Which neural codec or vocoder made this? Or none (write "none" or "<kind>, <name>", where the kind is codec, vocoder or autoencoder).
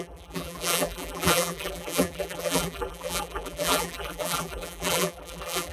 vocoder, BigVGAN v2